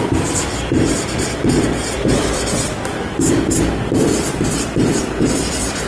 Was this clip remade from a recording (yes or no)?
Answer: yes